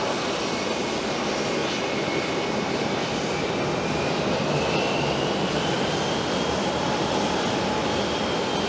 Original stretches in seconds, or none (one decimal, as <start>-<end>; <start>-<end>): 0.0-8.7